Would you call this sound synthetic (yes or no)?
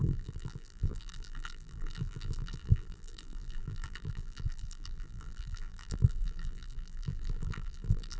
yes